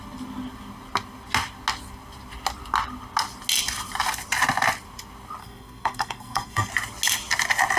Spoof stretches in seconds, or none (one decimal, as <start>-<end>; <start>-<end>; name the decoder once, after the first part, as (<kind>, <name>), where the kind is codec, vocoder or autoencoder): 5.4-6.7 (codec, SNAC)